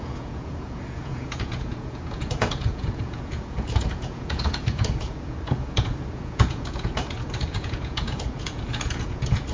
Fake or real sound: fake